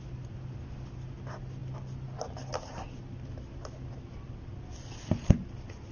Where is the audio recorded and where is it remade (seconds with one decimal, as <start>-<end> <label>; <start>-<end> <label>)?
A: 0.0-5.9 recorded